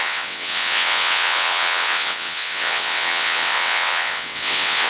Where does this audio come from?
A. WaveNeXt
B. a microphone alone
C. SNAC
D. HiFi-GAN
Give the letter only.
A